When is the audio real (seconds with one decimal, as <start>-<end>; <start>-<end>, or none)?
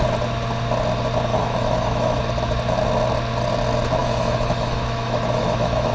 0.0-1.3; 2.2-4.0